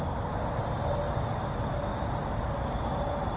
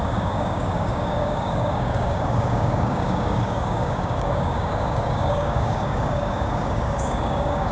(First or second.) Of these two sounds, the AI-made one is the second